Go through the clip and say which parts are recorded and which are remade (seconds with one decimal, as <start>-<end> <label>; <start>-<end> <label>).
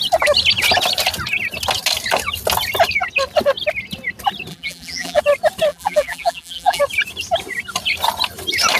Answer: 0.0-4.5 recorded; 4.5-5.2 remade; 5.2-5.7 recorded; 5.7-6.8 remade; 6.8-8.8 recorded